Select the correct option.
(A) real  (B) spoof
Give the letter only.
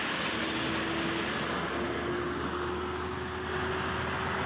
A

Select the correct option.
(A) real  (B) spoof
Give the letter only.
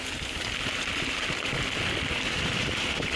A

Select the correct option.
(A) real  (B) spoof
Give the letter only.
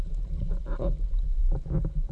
B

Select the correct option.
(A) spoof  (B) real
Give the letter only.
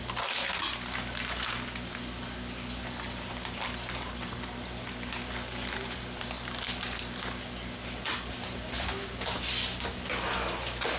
B